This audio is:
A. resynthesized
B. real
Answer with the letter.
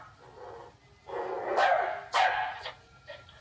B